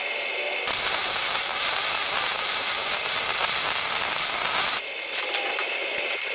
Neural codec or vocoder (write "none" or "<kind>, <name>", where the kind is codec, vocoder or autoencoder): none